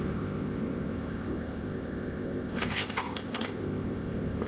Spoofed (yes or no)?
yes